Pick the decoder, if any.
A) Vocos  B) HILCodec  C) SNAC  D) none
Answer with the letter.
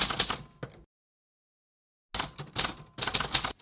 D